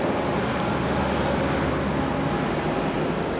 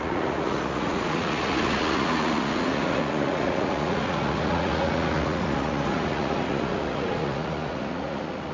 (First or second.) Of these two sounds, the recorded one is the first